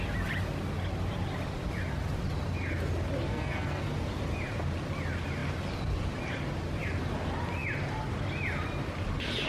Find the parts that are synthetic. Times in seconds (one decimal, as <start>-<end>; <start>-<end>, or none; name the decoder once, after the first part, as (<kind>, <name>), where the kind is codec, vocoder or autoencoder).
3.3-3.8 (codec, SNAC)